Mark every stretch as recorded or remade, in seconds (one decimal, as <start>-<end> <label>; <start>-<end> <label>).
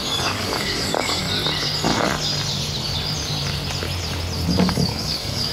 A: 0.0-1.2 remade; 1.2-4.5 recorded; 4.5-5.5 remade